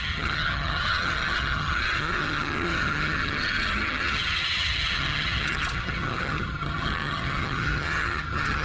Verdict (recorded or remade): remade